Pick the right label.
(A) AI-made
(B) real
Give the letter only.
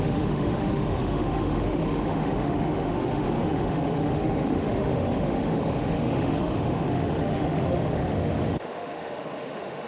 A